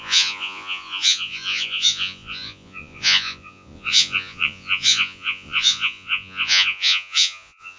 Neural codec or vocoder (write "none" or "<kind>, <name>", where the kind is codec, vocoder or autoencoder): vocoder, Vocos